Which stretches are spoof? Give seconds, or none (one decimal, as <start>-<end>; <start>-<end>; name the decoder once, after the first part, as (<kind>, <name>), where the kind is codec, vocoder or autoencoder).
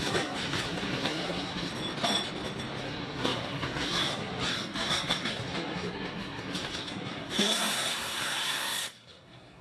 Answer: 0.0-1.7 (codec, SNAC); 2.8-9.6